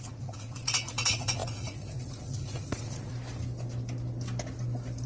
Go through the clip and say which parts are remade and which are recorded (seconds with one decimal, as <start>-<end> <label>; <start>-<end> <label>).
0.0-3.1 remade; 3.1-5.1 recorded